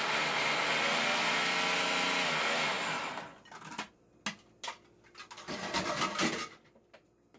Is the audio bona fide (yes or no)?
yes